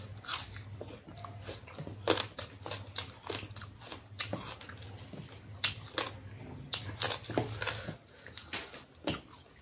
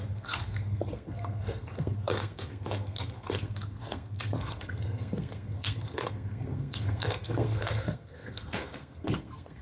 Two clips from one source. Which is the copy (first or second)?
second